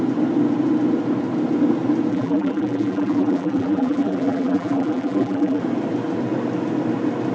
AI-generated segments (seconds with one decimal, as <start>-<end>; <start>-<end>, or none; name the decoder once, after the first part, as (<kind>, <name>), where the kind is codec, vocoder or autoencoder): 2.1-5.6 (vocoder, BigVGAN v2)